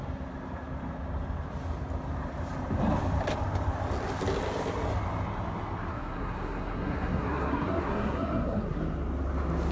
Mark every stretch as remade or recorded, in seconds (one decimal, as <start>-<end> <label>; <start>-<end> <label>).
0.0-5.9 recorded; 5.9-8.8 remade; 8.8-9.7 recorded